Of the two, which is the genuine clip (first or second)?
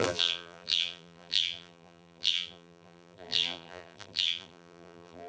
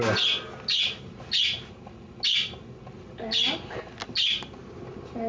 second